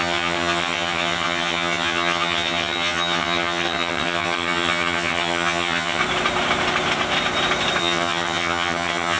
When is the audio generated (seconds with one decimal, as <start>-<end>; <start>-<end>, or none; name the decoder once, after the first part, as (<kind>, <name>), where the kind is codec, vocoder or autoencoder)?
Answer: 0.0-6.0 (vocoder, HiFi-GAN); 7.8-9.2